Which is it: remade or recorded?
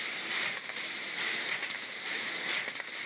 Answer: recorded